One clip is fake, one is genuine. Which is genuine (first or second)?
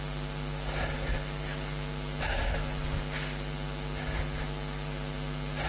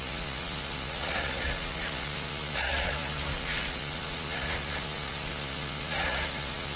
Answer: first